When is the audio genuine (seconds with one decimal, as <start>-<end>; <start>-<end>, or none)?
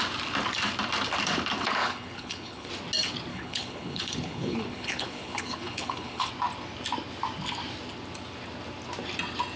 0.0-1.8; 2.7-3.3; 6.3-9.6